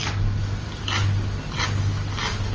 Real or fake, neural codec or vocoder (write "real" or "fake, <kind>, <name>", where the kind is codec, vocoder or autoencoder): real